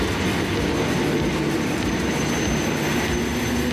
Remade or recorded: recorded